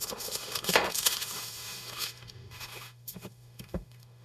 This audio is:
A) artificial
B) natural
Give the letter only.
A